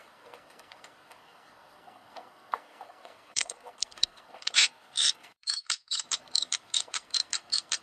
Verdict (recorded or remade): remade